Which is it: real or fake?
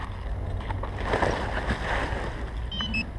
real